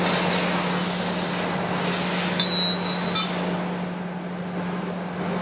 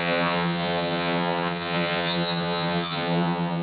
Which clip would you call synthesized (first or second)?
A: second